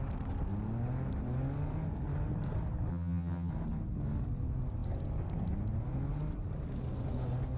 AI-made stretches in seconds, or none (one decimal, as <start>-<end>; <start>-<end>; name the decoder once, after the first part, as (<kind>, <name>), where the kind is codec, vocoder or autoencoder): 2.9-3.5 (vocoder, HiFi-GAN)